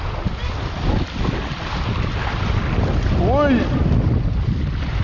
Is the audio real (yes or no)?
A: yes